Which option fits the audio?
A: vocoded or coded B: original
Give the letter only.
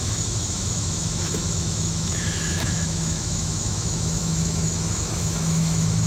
A